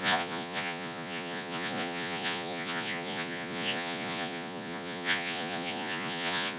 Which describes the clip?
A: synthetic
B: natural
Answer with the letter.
A